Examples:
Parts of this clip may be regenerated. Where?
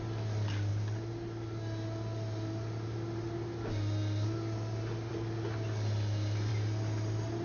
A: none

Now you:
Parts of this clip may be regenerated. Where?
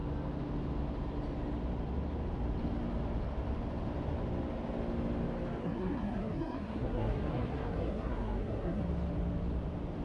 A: 5.6-8.8 (codec, SNAC)